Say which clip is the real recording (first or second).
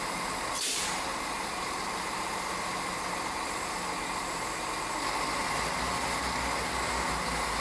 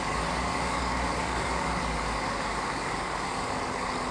first